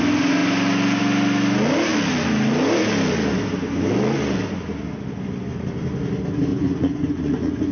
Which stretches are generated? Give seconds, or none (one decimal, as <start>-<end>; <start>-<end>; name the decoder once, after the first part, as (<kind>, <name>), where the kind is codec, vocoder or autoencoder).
6.5-7.7 (vocoder, Vocos)